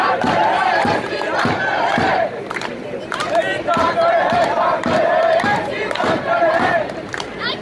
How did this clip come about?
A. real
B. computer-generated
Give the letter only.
B